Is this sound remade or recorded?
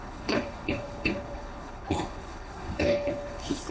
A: remade